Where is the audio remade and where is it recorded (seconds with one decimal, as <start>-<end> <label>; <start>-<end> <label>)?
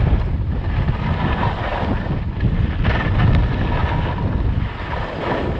0.0-5.6 recorded